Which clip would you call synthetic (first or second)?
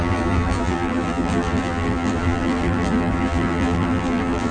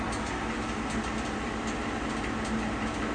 first